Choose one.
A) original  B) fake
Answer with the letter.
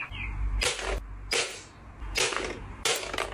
A